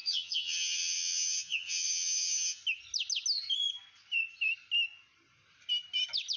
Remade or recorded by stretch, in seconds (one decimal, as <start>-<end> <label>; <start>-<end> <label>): 0.0-2.6 remade; 2.6-6.4 recorded